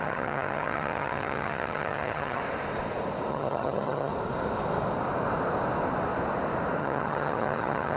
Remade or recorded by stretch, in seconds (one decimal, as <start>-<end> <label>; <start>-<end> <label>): 0.0-2.4 remade; 2.4-3.3 recorded; 3.3-4.1 remade; 4.1-6.8 recorded; 6.8-8.0 remade